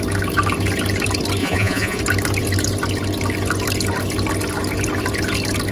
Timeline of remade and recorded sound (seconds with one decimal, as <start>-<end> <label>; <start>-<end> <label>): 0.0-1.4 recorded; 1.4-2.0 remade; 2.0-5.7 recorded